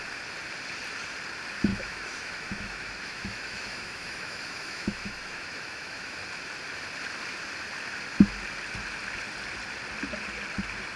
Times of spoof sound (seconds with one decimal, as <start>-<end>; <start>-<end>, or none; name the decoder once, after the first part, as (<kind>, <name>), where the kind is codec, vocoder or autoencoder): 1.7-6.2 (autoencoder, DAC-VAE)